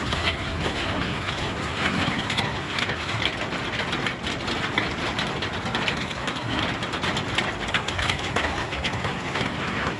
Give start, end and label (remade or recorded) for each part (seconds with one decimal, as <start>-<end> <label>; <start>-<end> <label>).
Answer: 0.0-3.2 remade; 3.2-5.9 recorded; 5.9-6.6 remade; 6.6-7.7 recorded; 7.7-10.0 remade